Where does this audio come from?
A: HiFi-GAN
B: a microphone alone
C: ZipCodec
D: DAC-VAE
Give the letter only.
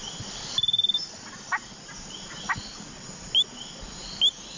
B